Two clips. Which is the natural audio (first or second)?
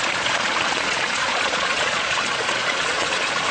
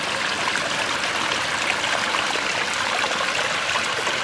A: second